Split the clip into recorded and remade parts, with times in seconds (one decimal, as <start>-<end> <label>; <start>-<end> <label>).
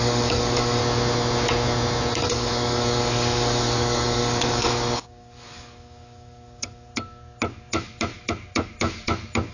0.0-0.8 remade; 0.8-2.2 recorded; 2.2-6.9 remade; 6.9-9.5 recorded